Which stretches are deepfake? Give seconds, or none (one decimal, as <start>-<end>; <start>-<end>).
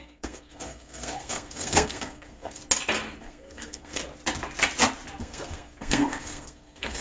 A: 0.0-2.6; 3.2-4.0; 5.2-7.0